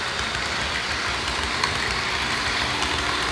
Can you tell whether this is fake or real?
fake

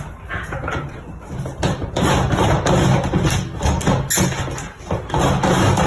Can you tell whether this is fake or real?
real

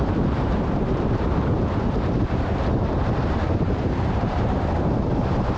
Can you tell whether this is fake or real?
fake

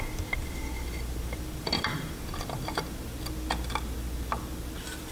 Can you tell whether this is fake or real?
fake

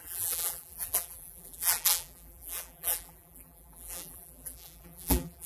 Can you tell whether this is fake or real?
fake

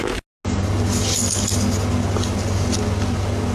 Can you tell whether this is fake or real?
real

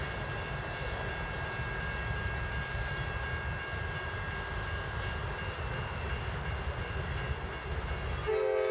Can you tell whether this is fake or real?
real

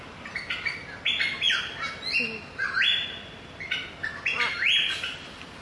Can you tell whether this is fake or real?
real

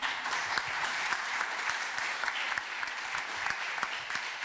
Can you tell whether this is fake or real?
fake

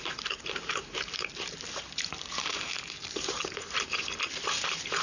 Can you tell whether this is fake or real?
fake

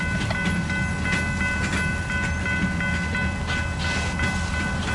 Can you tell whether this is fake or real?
real